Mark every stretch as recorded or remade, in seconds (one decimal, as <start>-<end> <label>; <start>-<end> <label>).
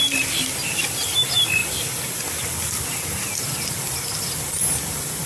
0.0-5.3 recorded